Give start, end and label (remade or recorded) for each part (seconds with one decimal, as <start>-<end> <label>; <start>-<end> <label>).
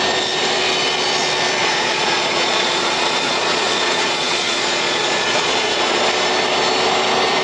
0.0-1.6 recorded; 1.6-6.0 remade; 6.0-7.4 recorded